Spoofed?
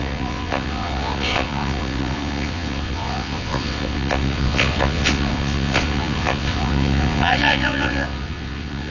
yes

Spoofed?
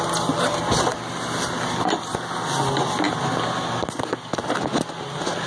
no